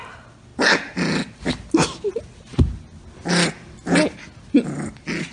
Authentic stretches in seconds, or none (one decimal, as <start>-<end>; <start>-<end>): 0.0-5.3